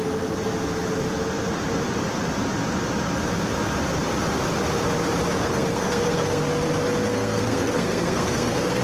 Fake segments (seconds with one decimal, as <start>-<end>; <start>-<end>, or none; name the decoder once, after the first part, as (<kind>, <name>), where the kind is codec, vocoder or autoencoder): 5.4-6.4 (codec, SNAC); 7.1-8.8